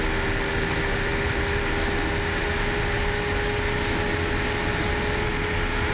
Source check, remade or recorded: recorded